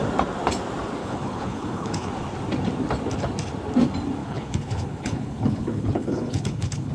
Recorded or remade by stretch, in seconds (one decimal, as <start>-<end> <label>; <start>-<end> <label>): 0.0-1.0 recorded; 1.0-2.1 remade; 2.1-4.2 recorded; 4.2-6.9 remade